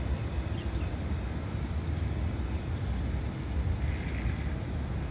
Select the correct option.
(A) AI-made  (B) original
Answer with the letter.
B